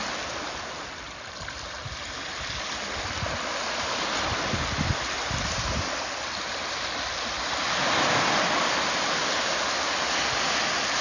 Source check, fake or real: real